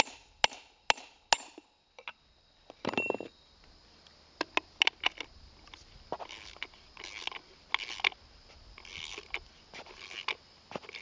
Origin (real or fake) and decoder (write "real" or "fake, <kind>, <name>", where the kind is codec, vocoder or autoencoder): real